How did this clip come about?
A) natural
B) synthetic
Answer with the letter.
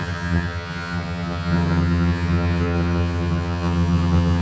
B